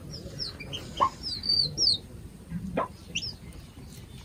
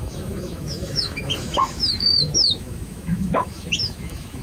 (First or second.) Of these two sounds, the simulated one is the second